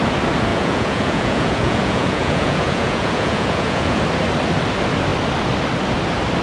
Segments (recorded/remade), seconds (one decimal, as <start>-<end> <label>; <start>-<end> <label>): 0.0-0.5 recorded; 0.5-4.0 remade; 4.0-6.4 recorded